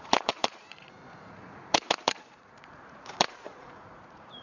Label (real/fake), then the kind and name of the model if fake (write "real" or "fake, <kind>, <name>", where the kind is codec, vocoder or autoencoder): fake, vocoder, Vocos